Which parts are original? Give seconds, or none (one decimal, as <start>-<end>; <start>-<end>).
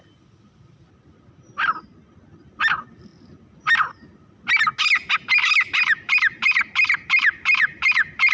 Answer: 0.0-3.1; 4.3-5.4